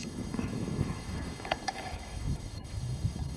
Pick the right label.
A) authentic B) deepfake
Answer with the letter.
B